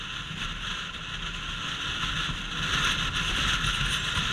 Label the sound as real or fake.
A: real